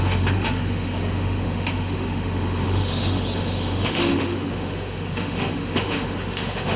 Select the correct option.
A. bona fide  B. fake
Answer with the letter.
B